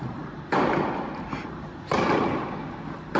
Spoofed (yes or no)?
no